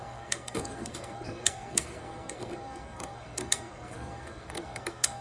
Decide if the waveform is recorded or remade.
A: remade